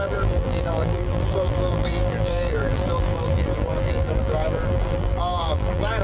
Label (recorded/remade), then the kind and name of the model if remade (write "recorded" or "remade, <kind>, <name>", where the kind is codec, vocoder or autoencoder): remade, vocoder, BigVGAN v2